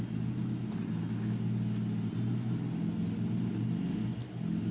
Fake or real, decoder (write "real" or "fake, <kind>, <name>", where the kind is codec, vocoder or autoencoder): real